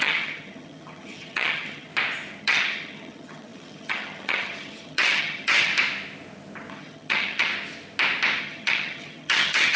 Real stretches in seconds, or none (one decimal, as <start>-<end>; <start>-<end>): 1.9-2.4; 5.7-6.7; 7.5-8.4